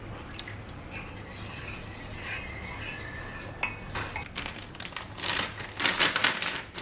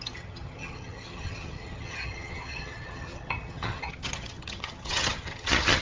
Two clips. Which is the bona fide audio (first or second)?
first